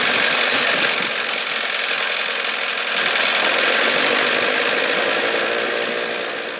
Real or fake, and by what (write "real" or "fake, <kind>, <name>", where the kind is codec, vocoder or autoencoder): real